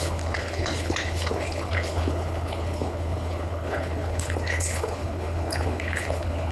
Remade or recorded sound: remade